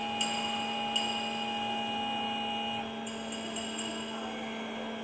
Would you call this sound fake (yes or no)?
no